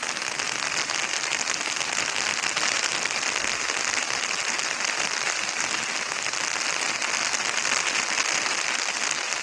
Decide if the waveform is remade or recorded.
recorded